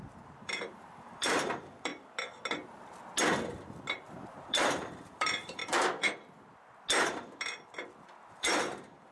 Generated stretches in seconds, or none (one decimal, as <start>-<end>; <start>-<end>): 0.0-1.9; 4.1-5.6; 8.3-9.1